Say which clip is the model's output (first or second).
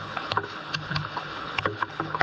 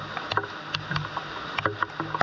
first